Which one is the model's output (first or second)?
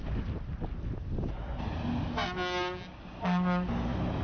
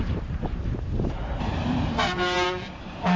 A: second